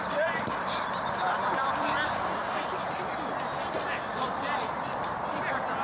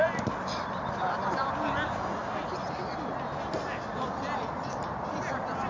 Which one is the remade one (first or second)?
first